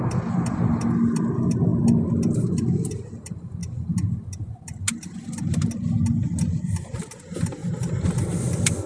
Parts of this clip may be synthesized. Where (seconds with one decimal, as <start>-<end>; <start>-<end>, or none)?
none